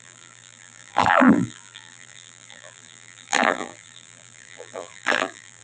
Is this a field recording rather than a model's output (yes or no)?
no